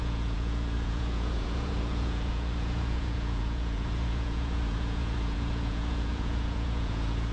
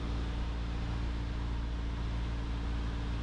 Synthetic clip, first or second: first